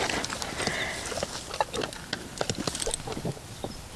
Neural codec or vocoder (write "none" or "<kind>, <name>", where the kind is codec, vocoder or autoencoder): none